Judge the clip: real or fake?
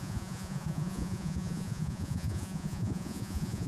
fake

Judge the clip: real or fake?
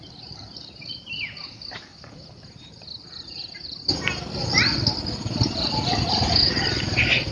real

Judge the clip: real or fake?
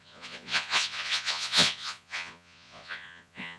fake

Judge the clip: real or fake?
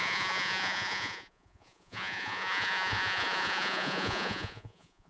fake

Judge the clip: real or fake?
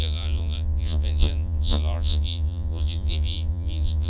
fake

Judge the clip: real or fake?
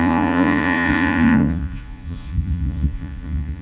fake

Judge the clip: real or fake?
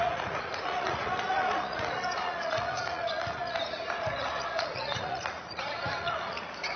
fake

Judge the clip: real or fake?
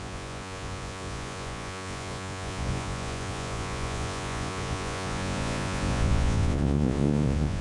fake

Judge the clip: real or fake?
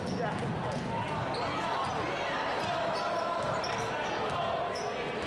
real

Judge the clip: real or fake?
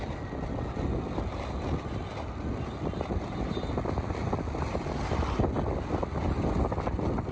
real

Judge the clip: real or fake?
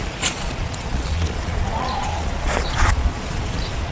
fake